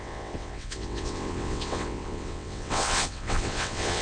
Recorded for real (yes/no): no